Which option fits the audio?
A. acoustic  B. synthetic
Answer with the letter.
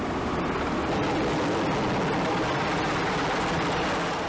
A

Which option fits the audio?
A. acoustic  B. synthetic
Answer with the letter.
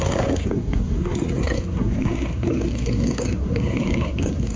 B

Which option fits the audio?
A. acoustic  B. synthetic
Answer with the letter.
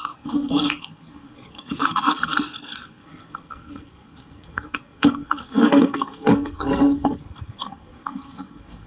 B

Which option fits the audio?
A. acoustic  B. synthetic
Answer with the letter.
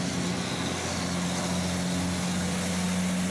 A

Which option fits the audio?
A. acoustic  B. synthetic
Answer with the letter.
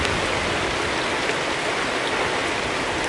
A